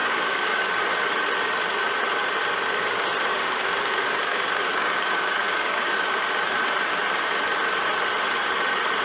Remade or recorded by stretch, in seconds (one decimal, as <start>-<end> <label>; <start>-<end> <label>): 0.0-0.6 remade; 0.6-3.3 recorded; 3.3-5.9 remade; 5.9-9.0 recorded